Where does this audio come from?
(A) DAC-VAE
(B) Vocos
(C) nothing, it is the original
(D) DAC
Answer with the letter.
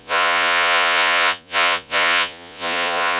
B